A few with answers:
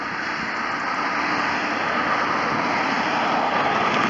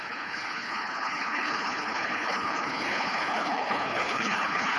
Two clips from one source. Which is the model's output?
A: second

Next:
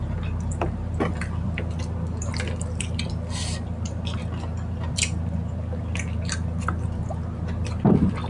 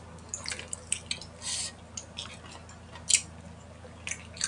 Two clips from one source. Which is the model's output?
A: first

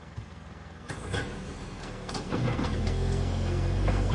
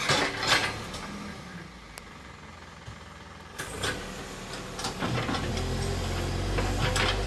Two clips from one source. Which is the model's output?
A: first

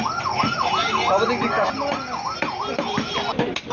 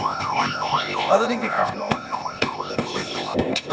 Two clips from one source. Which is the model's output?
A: second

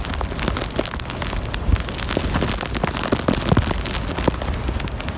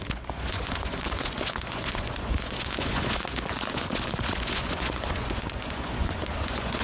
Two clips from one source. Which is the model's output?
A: second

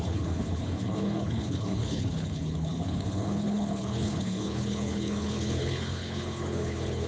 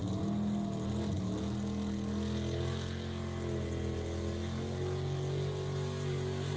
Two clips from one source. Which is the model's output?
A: first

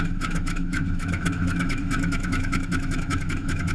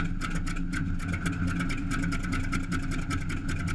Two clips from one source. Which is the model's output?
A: first